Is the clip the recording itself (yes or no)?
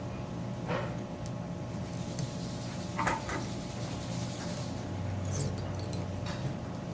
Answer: yes